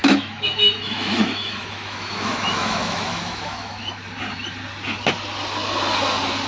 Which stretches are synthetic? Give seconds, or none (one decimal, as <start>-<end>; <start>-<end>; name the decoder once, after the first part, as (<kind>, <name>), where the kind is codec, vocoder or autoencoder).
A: 0.0-3.9 (autoencoder, DAC-VAE)